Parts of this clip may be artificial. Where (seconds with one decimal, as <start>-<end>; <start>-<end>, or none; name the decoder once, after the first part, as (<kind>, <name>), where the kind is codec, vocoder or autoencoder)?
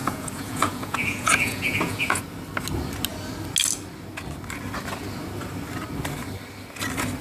0.0-2.2 (vocoder, Vocos)